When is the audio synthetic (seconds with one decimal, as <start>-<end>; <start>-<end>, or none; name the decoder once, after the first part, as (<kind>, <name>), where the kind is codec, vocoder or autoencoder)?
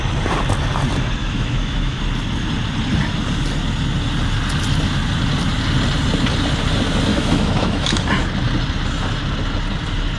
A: 1.2-2.0 (autoencoder, DAC-VAE); 7.1-8.0